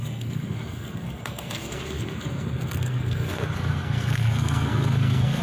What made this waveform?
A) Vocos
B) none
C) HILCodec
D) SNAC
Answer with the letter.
D